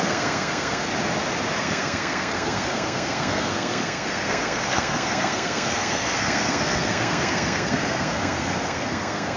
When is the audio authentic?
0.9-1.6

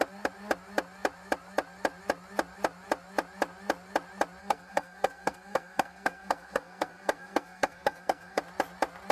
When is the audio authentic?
0.0-4.4; 8.4-9.1

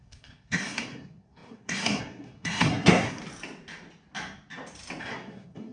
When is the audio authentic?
3.2-5.0

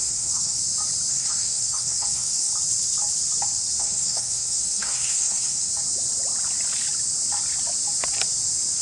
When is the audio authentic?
0.6-1.1; 2.5-3.8; 5.7-8.8

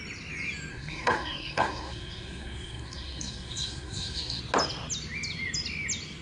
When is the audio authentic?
0.0-0.7; 4.4-6.2